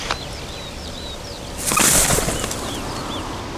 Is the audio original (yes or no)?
yes